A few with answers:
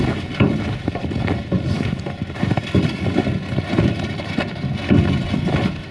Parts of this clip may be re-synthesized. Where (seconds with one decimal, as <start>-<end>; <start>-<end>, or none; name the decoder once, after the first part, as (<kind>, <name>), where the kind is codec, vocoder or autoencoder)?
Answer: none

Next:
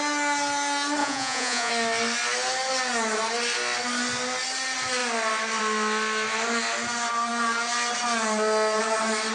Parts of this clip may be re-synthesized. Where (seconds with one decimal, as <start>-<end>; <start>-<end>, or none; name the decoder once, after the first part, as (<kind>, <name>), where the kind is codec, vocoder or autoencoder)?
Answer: 1.0-1.7 (vocoder, Vocos)

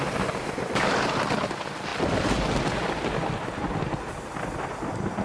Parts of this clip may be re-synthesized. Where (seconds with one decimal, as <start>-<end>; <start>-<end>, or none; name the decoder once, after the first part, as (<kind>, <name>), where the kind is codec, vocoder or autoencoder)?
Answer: none